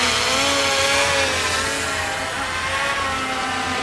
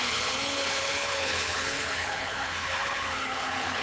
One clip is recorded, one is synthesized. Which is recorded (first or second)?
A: first